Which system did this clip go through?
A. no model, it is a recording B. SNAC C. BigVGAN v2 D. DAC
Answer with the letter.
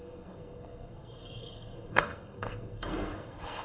B